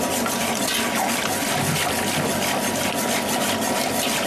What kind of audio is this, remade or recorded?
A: recorded